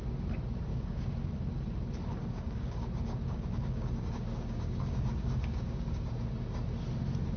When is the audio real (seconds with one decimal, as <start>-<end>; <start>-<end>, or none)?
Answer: 0.0-0.7; 1.3-2.2; 6.1-7.4